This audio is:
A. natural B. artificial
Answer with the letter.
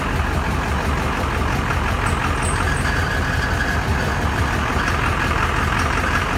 A